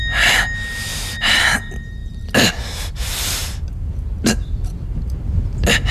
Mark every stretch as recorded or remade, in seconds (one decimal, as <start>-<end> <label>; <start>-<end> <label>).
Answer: 0.0-0.9 recorded; 0.9-1.4 remade; 1.4-5.9 recorded